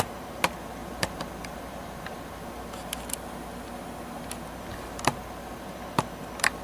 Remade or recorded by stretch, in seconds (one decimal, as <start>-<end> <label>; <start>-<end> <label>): 0.0-6.6 recorded